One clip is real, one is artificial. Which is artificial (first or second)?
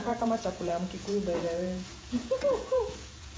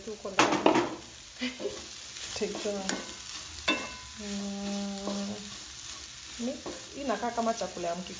first